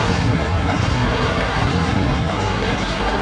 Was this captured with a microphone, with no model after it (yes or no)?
no